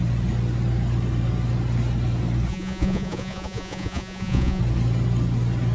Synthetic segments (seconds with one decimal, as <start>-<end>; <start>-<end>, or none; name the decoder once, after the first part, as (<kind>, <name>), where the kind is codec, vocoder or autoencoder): 2.5-4.6 (vocoder, Vocos)